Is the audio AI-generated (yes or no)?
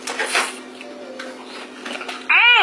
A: no